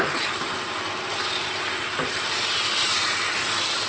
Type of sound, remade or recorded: recorded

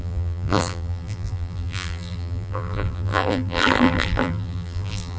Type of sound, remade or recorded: remade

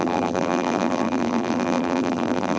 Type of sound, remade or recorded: remade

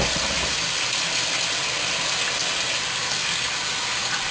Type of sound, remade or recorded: recorded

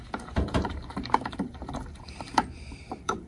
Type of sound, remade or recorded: remade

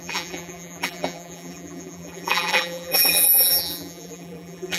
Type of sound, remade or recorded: remade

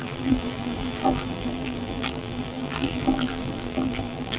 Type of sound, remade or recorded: remade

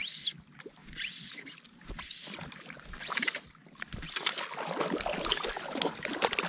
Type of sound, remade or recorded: recorded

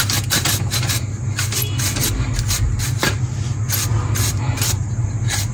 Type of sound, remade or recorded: recorded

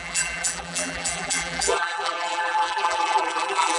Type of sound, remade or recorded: remade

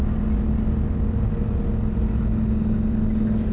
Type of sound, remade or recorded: recorded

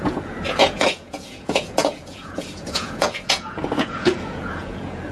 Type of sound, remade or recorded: remade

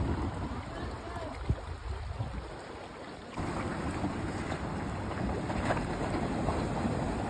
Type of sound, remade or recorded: recorded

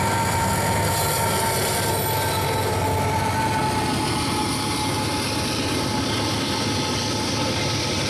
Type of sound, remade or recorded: recorded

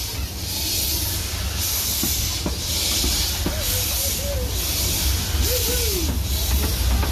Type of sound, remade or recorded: recorded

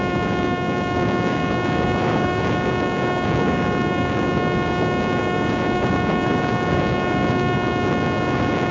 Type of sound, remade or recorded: remade